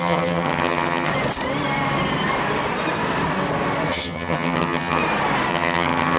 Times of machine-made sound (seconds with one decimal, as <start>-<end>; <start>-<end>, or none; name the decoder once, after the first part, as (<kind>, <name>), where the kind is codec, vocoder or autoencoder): 0.0-1.1 (vocoder, HiFi-GAN); 3.9-5.0; 5.5-6.2